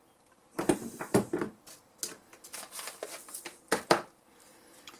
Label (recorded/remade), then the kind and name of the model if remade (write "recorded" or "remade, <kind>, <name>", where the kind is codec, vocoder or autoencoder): recorded